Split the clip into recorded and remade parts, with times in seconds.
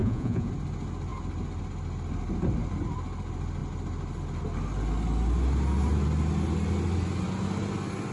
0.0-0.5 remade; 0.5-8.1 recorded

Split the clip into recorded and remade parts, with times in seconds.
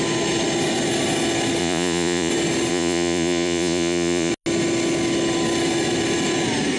0.0-1.6 recorded; 1.6-2.3 remade; 2.3-2.7 recorded; 2.7-4.3 remade; 4.3-6.8 recorded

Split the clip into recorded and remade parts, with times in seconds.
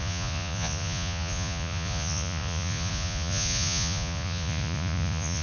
0.0-5.4 remade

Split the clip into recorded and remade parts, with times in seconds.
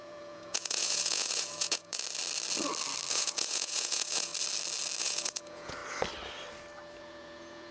0.0-2.0 remade; 2.0-3.1 recorded; 3.1-4.3 remade; 4.3-5.0 recorded; 5.0-5.8 remade; 5.8-7.0 recorded; 7.0-7.7 remade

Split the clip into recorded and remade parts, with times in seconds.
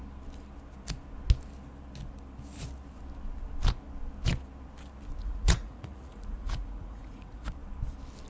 0.0-5.2 recorded; 5.2-7.5 remade; 7.5-8.3 recorded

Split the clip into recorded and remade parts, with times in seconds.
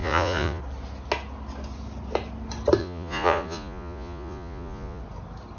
0.0-0.6 remade; 0.6-2.8 recorded; 2.8-5.0 remade; 5.0-5.6 recorded